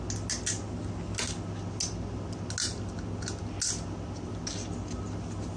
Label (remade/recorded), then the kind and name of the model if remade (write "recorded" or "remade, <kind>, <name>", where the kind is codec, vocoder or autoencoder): recorded